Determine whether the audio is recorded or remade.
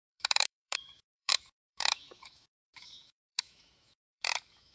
remade